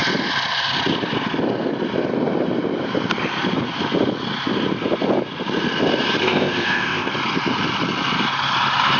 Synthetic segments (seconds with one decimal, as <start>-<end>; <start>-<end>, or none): 6.2-7.1